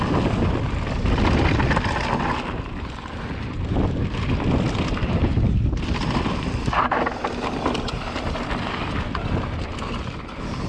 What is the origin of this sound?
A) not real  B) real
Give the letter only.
B